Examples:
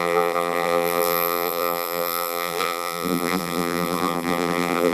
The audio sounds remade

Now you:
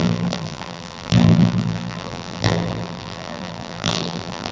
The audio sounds remade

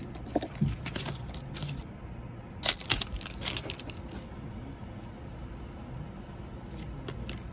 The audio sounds recorded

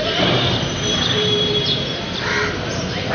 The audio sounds remade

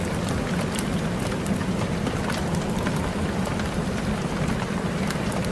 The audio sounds recorded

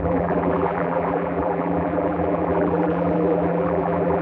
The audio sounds remade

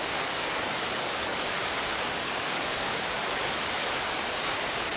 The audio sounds remade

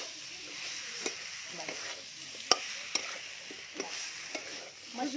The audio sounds recorded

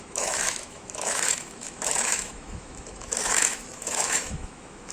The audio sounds remade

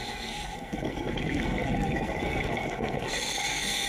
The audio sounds remade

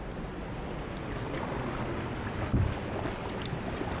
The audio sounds remade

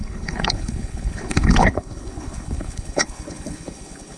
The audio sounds remade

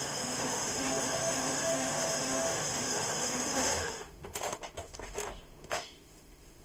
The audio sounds remade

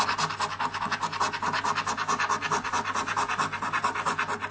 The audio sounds recorded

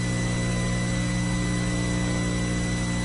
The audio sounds recorded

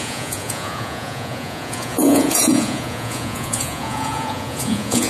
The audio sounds remade